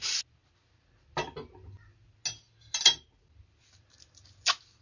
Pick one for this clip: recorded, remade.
recorded